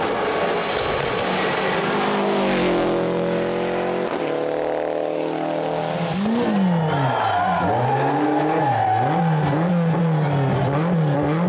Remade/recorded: recorded